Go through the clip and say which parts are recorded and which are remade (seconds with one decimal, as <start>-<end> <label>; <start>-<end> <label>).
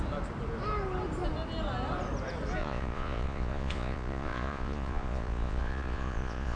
0.0-2.6 recorded; 2.6-6.6 remade